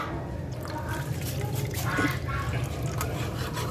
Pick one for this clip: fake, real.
real